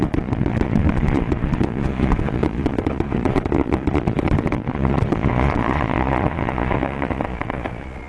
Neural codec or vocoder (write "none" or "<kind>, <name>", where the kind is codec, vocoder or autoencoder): vocoder, Vocos